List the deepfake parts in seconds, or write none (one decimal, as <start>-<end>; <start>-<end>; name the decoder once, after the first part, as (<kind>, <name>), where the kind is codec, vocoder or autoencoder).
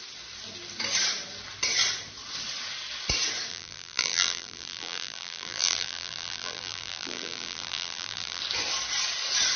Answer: 3.5-8.4 (vocoder, BigVGAN v2)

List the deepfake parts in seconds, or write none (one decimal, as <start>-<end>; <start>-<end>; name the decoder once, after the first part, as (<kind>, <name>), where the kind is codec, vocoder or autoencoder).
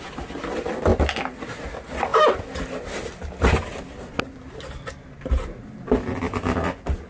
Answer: none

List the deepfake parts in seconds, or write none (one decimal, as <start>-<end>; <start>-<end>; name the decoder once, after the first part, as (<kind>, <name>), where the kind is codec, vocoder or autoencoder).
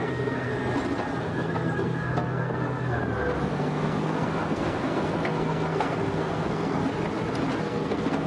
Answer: 0.0-0.5 (codec, SNAC); 1.2-3.0; 3.5-6.8; 7.6-8.3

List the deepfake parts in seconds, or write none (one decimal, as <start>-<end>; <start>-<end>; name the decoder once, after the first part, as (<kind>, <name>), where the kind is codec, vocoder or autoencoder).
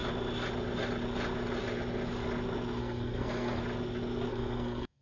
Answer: 2.8-3.6 (codec, SNAC); 4.3-5.0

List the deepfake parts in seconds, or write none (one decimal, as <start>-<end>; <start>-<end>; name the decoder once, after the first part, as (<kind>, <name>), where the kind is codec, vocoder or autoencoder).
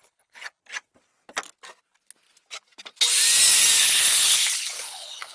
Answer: 0.0-0.6 (codec, HILCodec); 3.8-5.3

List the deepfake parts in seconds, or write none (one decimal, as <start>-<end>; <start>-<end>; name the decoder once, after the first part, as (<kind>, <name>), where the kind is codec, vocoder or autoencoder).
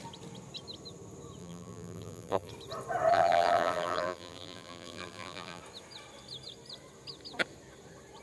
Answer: 1.4-2.5 (vocoder, BigVGAN v2); 3.1-5.6